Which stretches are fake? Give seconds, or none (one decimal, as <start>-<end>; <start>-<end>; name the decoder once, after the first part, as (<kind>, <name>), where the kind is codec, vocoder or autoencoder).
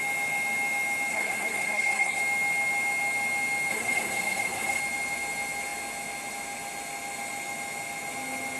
1.1-2.2 (codec, SNAC); 3.7-4.8